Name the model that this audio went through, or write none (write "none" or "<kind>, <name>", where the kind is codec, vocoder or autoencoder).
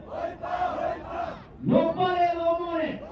none